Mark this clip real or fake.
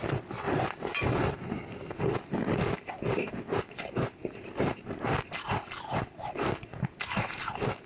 real